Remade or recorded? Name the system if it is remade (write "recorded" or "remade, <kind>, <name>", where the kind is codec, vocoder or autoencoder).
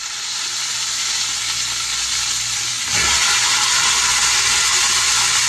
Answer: recorded